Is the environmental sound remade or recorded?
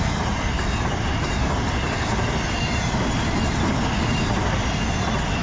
recorded